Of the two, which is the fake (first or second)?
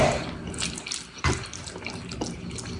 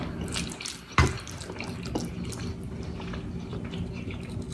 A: first